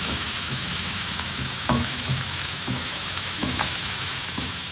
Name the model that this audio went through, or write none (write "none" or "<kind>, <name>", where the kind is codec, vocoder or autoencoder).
autoencoder, DAC-VAE